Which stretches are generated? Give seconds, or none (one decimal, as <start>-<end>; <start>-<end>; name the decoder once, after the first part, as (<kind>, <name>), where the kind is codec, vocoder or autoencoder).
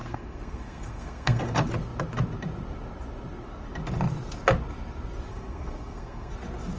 0.0-1.4 (codec, SNAC); 5.3-6.3